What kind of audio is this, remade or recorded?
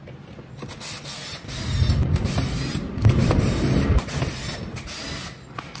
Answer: recorded